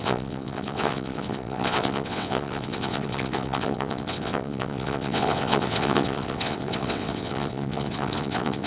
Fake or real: fake